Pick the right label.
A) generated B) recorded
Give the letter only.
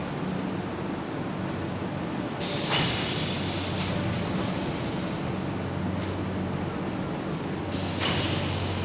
B